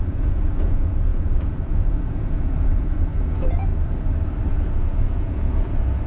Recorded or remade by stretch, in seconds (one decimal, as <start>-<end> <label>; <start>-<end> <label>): 0.0-3.7 remade; 3.7-4.5 recorded; 4.5-6.1 remade